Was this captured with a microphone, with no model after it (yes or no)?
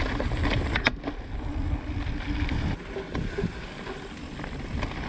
yes